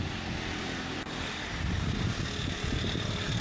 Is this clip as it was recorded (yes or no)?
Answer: yes